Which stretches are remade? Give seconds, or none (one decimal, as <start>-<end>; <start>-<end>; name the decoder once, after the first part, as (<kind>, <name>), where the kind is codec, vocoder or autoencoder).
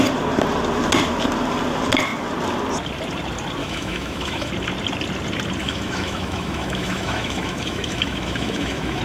3.6-4.5 (autoencoder, DAC-VAE); 5.6-9.0